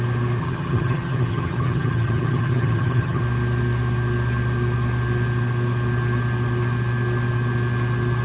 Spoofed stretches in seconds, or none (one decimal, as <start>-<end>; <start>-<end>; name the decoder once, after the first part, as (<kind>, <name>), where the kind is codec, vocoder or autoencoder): 0.4-3.2 (vocoder, HiFi-GAN)